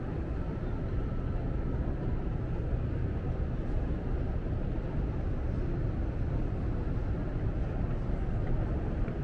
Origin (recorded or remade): recorded